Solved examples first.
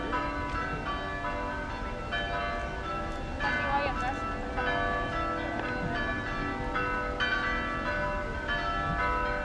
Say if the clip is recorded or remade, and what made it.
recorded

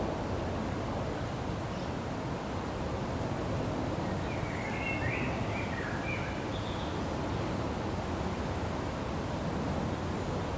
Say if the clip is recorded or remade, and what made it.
recorded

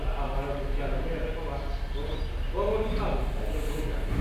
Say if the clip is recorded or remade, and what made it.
recorded